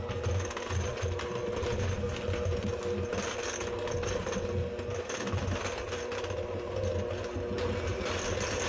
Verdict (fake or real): real